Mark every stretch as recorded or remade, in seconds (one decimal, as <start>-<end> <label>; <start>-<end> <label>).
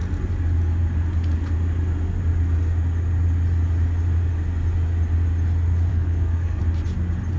0.0-5.9 recorded; 5.9-6.6 remade; 6.6-7.4 recorded